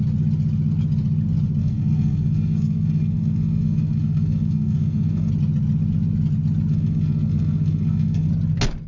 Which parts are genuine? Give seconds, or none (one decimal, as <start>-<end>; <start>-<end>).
0.0-1.6; 5.3-6.7; 8.3-8.9